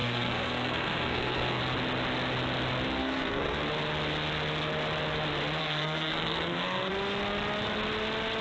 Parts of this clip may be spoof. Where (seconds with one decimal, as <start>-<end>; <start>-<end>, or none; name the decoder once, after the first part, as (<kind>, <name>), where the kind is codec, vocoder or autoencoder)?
0.0-1.6 (codec, SNAC); 3.0-3.6; 5.6-6.9